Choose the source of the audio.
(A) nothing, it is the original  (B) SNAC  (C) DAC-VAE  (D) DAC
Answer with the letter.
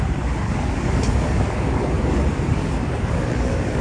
D